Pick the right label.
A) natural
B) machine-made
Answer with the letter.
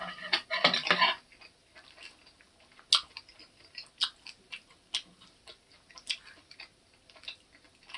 A